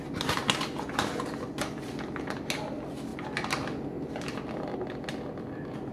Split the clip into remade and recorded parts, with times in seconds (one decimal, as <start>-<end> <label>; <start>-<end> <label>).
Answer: 0.0-5.9 recorded